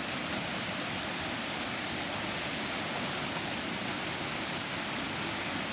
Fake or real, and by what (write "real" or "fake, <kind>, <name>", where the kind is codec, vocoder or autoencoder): real